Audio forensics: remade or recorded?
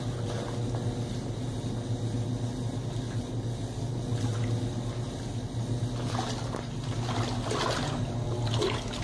recorded